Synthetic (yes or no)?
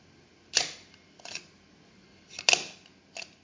no